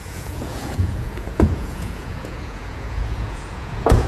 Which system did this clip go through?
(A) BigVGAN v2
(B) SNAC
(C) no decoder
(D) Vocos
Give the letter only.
D